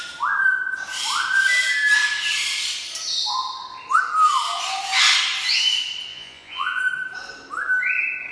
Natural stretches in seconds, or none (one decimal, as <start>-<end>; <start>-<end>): 0.0-6.1; 6.8-8.3